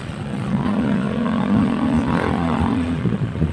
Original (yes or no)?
no